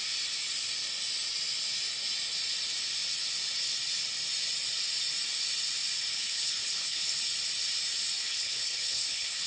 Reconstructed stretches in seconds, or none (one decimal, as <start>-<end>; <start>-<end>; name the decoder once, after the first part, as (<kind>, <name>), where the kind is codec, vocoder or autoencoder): 6.1-7.2 (codec, HILCodec); 8.2-9.5